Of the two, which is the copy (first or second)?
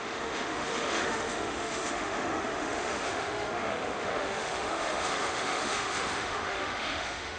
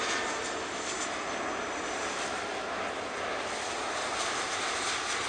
first